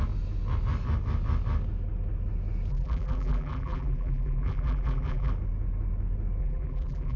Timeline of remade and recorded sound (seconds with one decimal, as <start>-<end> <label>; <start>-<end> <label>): 0.0-2.7 recorded; 2.7-5.3 remade; 5.3-6.4 recorded; 6.4-7.2 remade